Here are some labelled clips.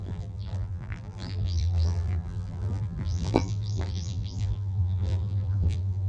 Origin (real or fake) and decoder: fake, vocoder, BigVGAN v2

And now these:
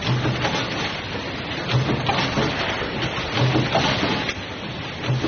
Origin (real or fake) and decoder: real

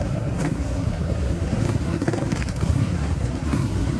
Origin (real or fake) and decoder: fake, codec, SNAC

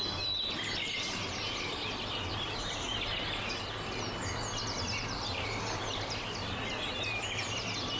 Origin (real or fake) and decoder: real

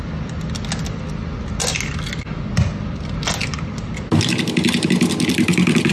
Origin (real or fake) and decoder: real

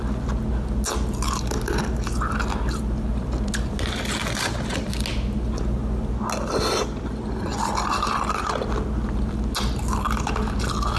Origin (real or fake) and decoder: real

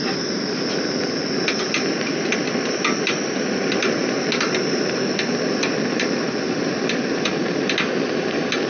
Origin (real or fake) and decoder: real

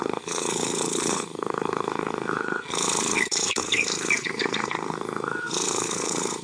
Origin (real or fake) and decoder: fake, codec, SNAC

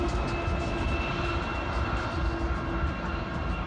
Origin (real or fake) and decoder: real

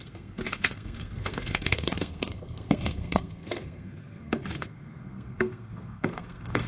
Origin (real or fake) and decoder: fake, codec, SNAC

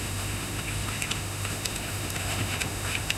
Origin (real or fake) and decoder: fake, autoencoder, DAC-VAE